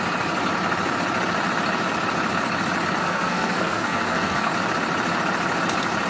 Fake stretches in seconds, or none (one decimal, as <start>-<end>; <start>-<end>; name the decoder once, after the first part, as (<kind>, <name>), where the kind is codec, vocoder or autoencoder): 3.0-4.5 (codec, SNAC)